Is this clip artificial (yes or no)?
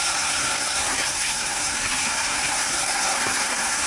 yes